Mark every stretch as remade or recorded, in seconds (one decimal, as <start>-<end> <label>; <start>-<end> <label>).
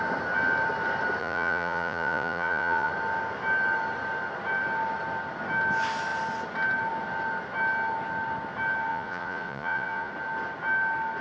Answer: 0.0-1.2 recorded; 1.2-2.9 remade; 2.9-8.9 recorded; 8.9-10.1 remade; 10.1-11.2 recorded